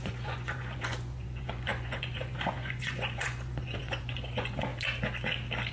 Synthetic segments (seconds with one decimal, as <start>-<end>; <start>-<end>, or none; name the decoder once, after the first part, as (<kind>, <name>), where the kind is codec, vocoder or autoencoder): 0.0-4.7 (vocoder, Vocos)